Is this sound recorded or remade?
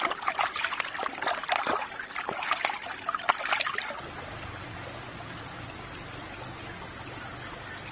recorded